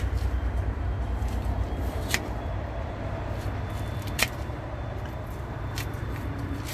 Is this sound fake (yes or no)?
yes